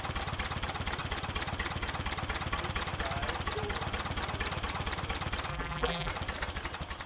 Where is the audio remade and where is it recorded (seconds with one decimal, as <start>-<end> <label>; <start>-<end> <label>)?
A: 0.0-5.5 recorded; 5.5-6.1 remade; 6.1-7.1 recorded